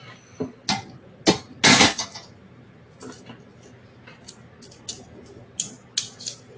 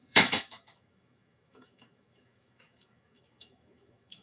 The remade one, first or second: second